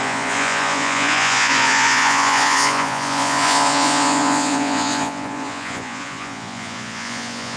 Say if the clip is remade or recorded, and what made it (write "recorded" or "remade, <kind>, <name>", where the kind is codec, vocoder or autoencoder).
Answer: remade, vocoder, Vocos